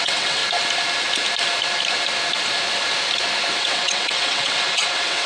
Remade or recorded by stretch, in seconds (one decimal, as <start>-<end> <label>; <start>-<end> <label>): 0.0-0.4 remade; 0.4-3.6 recorded; 3.6-5.3 remade